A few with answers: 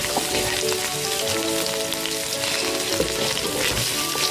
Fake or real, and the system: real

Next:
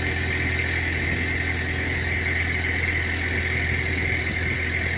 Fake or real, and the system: real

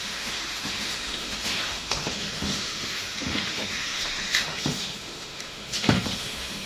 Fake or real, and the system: fake, autoencoder, DAC-VAE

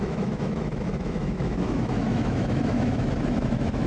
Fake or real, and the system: fake, autoencoder, DAC-VAE